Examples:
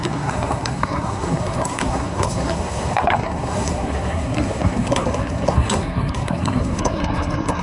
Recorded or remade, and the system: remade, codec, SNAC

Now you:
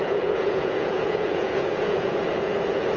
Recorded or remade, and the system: remade, vocoder, Vocos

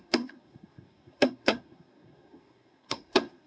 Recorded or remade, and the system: remade, codec, SNAC